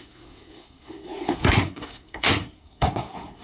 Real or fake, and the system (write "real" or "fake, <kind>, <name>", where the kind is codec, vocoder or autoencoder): fake, codec, SNAC